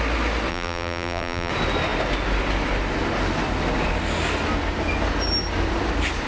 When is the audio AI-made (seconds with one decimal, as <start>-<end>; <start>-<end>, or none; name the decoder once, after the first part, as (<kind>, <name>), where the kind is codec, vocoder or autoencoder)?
0.5-1.5 (vocoder, BigVGAN v2)